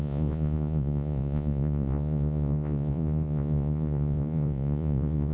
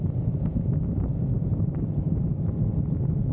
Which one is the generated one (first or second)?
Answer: first